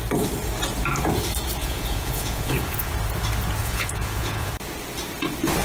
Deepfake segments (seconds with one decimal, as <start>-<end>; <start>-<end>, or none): 1.6-2.9; 3.6-4.5